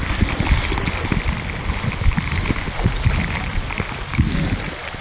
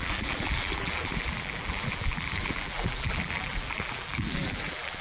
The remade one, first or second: second